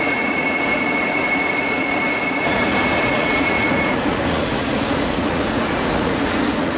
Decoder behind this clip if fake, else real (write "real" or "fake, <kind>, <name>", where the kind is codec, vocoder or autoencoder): fake, vocoder, Vocos